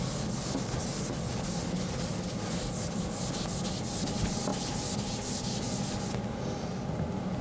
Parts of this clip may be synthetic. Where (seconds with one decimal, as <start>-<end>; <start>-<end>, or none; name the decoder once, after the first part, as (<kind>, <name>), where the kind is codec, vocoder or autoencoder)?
none